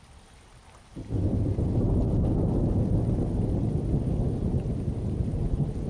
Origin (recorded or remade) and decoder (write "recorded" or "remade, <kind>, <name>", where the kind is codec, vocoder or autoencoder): recorded